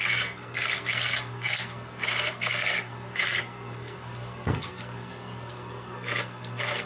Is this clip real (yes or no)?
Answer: no